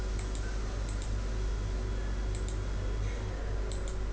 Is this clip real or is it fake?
real